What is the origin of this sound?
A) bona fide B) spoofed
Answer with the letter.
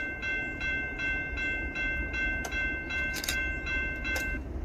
B